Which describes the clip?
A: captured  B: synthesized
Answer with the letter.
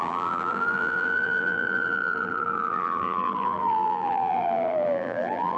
B